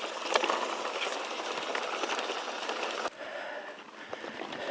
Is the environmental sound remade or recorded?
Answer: recorded